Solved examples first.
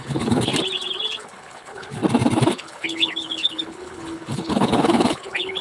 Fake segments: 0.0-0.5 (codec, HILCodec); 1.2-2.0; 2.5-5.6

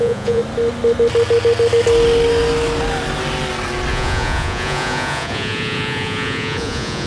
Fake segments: 0.0-0.4 (vocoder, Vocos); 3.9-7.1

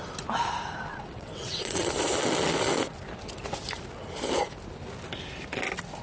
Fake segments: 0.9-1.9 (vocoder, WaveNeXt)

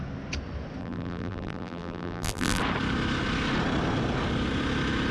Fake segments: 0.8-2.6 (vocoder, BigVGAN v2)

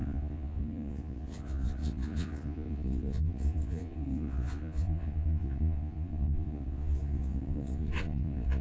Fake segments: 0.0-8.6 (vocoder, Vocos)